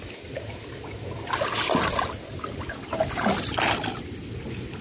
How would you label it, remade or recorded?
recorded